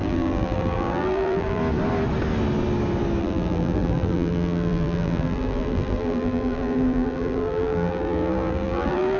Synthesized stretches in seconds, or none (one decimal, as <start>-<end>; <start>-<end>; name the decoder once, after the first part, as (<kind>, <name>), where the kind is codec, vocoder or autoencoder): 0.0-1.6 (vocoder, BigVGAN v2); 3.2-9.2